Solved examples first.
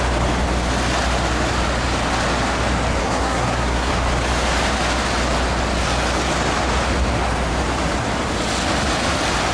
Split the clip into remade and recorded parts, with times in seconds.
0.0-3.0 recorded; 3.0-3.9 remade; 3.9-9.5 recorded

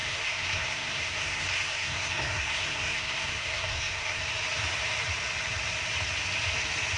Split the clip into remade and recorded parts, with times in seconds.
0.0-4.2 remade; 4.2-7.0 recorded

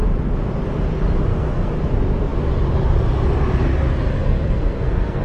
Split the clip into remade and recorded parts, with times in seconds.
0.0-1.3 recorded; 1.3-1.8 remade; 1.8-4.2 recorded; 4.2-5.2 remade

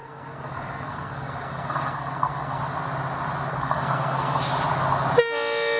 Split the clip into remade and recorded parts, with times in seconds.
0.0-2.6 remade; 2.6-3.5 recorded; 3.5-4.4 remade; 4.4-5.8 recorded

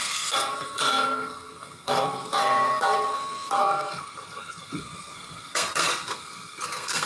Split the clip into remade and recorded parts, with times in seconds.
0.0-7.1 remade

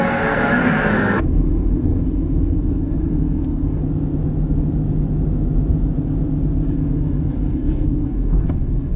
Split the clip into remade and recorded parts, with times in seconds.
0.0-3.8 remade; 3.8-6.7 recorded; 6.7-9.0 remade

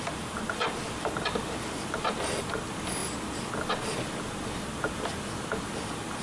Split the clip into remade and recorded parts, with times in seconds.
0.0-6.2 recorded

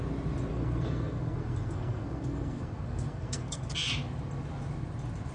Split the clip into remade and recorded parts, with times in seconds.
0.0-0.5 recorded; 0.5-3.7 remade; 3.7-5.3 recorded